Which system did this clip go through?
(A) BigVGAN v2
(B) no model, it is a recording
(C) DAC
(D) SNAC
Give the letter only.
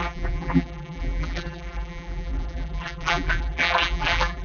A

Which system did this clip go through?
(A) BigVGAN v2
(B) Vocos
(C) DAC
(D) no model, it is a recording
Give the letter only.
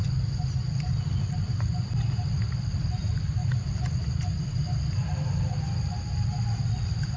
D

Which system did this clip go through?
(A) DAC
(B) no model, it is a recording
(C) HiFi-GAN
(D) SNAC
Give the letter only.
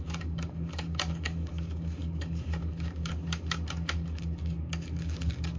A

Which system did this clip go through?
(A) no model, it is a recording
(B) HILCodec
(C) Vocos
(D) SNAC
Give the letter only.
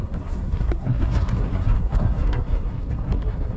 D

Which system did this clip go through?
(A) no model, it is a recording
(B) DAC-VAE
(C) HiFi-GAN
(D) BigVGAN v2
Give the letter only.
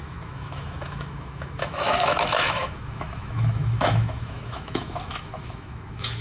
B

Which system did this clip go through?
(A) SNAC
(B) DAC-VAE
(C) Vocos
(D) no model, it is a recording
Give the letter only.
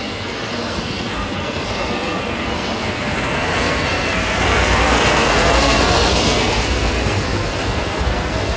A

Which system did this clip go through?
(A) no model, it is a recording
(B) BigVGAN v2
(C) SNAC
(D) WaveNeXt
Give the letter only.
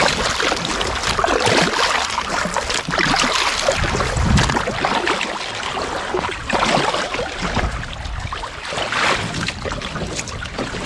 A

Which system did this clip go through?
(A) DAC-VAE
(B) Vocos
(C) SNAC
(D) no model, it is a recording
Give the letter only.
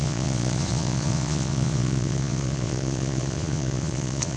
B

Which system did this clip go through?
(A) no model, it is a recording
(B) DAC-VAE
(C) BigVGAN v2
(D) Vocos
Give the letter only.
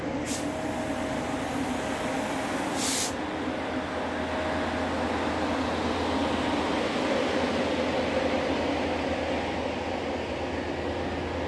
A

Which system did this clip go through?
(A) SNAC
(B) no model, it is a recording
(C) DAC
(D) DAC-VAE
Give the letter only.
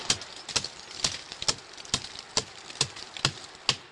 B